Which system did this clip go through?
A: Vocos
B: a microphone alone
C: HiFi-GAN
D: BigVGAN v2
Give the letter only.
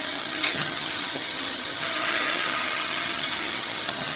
C